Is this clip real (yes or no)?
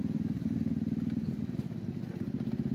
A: yes